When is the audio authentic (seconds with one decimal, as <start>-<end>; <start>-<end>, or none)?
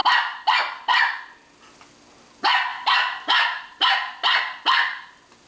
0.0-2.7; 3.8-5.5